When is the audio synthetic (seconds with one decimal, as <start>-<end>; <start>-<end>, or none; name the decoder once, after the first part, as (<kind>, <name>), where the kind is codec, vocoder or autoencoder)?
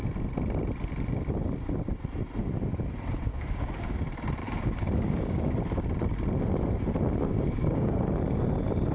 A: 3.3-4.0 (codec, DAC); 4.4-5.5; 7.3-8.0